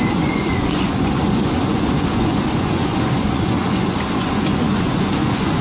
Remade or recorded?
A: remade